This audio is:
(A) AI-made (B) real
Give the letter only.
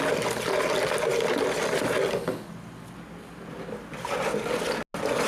B